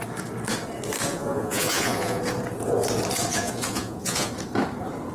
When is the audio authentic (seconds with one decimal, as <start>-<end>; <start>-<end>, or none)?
0.0-1.1; 2.2-3.3; 4.3-5.1